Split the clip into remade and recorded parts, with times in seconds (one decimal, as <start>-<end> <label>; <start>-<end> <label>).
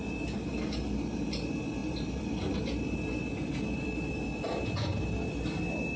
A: 0.0-1.8 recorded; 1.8-2.6 remade; 2.6-3.4 recorded; 3.4-5.2 remade; 5.2-6.0 recorded